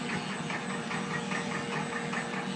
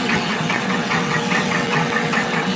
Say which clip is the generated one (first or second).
second